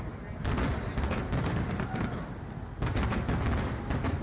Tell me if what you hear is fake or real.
real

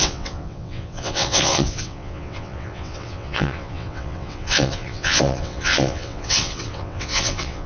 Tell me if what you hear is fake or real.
fake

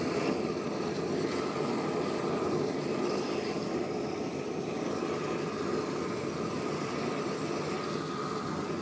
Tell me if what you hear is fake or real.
real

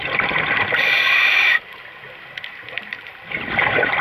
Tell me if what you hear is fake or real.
fake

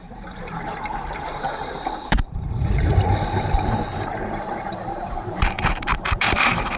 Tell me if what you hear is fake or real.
fake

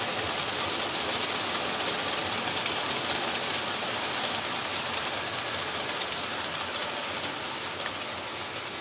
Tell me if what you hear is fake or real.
real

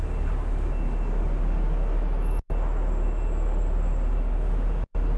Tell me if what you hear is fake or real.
real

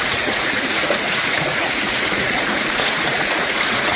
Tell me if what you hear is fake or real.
fake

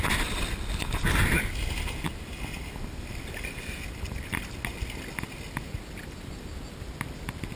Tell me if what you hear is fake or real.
real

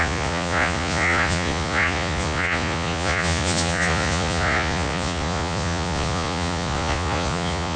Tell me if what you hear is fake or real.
fake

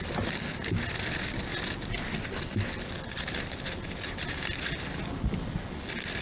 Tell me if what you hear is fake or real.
real